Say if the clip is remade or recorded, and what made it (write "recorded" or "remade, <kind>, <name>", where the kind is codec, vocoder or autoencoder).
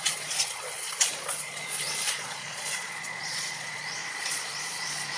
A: remade, vocoder, Vocos